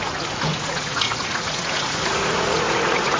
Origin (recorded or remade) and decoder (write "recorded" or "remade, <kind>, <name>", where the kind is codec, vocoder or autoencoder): remade, vocoder, Vocos